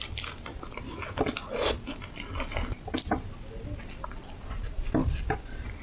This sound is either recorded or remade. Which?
recorded